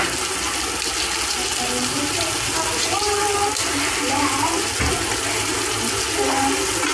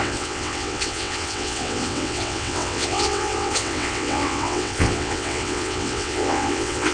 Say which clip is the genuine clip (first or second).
first